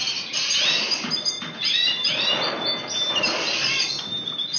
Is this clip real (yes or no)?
yes